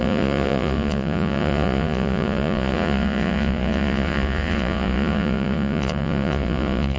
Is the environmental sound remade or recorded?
remade